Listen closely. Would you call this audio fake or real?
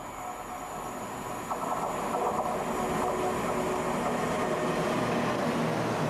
real